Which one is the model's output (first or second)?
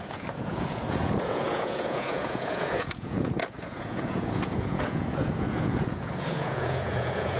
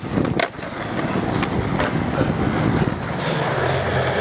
first